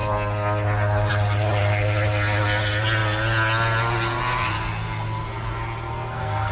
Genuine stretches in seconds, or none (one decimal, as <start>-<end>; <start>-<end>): 0.0-5.9